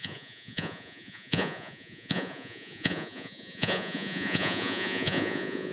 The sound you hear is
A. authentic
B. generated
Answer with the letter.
B